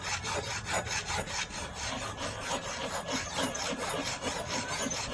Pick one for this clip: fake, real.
real